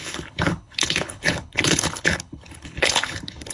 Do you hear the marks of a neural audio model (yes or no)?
yes